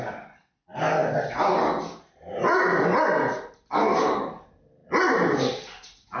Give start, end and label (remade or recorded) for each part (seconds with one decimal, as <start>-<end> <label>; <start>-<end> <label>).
0.0-6.2 recorded